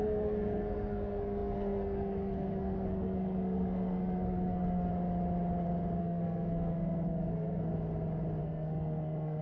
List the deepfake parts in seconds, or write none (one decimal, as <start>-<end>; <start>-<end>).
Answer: 0.0-4.9; 6.0-7.7; 8.4-9.4